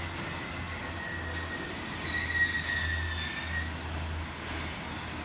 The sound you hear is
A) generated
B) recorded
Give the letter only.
B